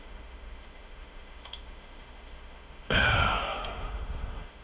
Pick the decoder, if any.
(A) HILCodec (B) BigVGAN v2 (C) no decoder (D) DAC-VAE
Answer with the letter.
D